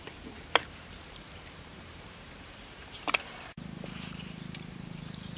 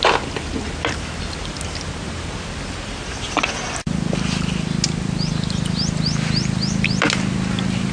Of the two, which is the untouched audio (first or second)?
second